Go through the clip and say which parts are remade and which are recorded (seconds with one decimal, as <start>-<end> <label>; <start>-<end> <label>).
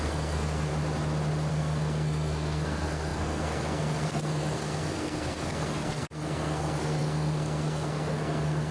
0.0-0.7 remade; 0.7-1.5 recorded; 1.5-8.7 remade